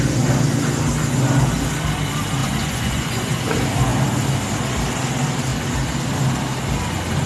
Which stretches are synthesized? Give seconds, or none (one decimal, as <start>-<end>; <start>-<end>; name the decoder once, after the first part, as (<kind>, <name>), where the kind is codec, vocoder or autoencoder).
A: 2.4-3.3 (vocoder, Vocos)